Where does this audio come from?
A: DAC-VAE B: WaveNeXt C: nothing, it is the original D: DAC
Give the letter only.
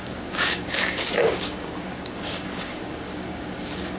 D